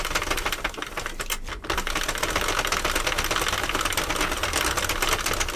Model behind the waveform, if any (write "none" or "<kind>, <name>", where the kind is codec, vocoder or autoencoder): none